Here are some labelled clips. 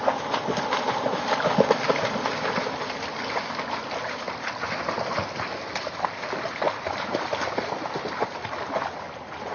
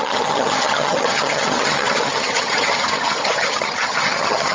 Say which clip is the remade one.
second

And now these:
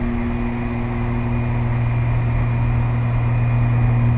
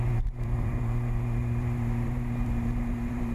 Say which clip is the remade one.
second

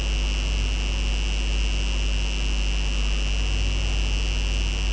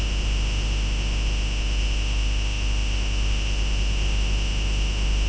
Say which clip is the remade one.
second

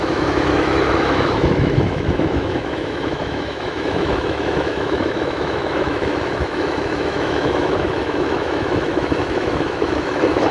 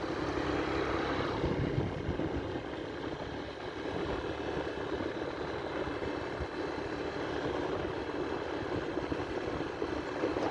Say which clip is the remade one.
first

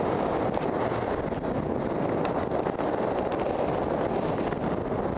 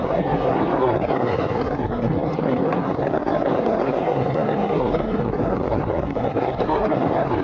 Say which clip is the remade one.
second